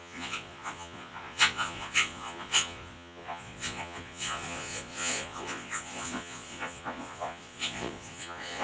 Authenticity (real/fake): fake